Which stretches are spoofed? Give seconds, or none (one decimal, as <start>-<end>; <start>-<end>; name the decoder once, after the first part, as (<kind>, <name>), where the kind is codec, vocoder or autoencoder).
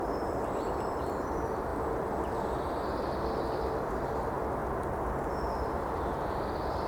none